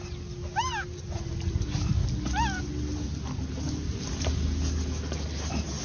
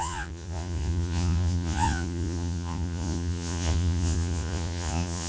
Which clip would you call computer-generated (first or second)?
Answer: second